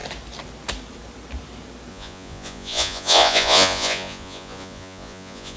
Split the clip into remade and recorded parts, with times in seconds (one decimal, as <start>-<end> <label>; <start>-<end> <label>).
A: 0.0-1.9 recorded; 1.9-5.6 remade